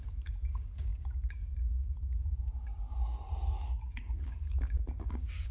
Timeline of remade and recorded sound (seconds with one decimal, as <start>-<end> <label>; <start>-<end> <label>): 0.0-5.5 remade